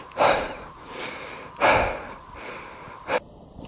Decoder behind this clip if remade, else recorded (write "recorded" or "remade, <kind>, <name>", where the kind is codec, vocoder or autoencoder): recorded